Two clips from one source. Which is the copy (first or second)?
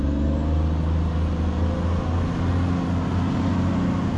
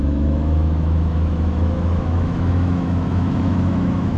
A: second